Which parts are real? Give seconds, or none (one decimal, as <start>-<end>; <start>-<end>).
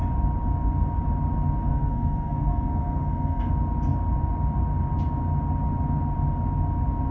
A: 0.0-1.7; 3.5-7.1